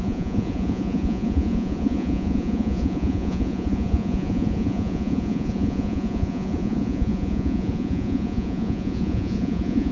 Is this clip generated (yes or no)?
yes